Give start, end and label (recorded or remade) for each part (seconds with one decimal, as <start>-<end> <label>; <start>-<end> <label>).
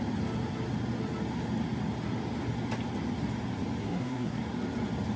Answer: 0.0-3.8 recorded; 3.8-4.4 remade; 4.4-5.2 recorded